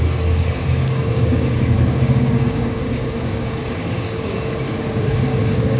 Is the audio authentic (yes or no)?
no